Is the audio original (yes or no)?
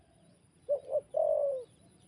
no